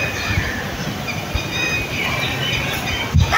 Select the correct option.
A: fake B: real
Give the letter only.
B